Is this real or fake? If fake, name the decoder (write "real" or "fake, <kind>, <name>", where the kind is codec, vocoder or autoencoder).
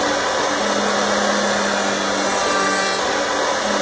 real